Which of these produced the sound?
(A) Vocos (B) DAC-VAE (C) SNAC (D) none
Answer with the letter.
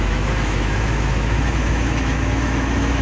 B